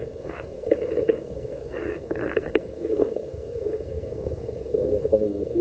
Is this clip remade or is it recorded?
remade